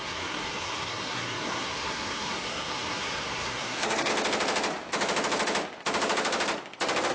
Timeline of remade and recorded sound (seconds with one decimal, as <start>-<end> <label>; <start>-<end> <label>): 0.0-4.1 remade; 4.1-7.1 recorded